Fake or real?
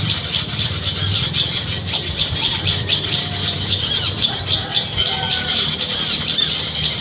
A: fake